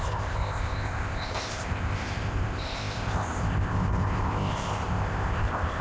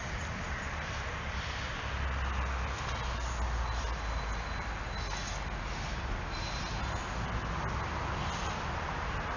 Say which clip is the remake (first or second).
first